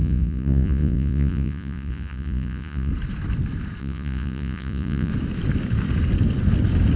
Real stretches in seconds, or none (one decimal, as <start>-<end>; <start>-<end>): 2.9-3.8; 5.1-7.0